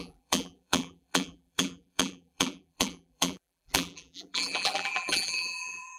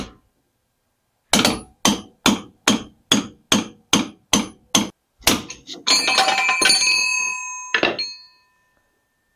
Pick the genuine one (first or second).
second